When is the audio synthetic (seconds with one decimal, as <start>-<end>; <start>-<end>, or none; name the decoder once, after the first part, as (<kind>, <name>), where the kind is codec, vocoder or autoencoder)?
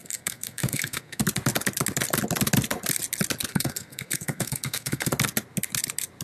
0.0-1.2 (codec, SNAC); 3.5-5.1